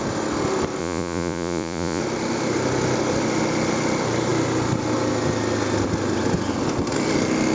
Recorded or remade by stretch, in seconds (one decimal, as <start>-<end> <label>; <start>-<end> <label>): 0.0-0.8 recorded; 0.8-2.0 remade; 2.0-7.5 recorded